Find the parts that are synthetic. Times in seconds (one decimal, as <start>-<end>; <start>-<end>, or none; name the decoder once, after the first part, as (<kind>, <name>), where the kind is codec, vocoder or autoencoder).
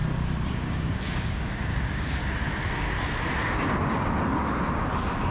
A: 0.5-2.2 (codec, DAC)